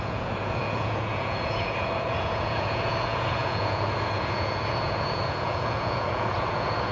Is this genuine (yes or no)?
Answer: no